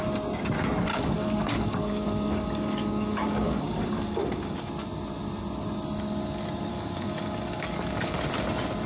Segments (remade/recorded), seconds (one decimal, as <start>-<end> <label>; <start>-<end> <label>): 0.0-0.9 recorded; 0.9-4.7 remade; 4.7-6.7 recorded; 6.7-8.2 remade; 8.2-8.9 recorded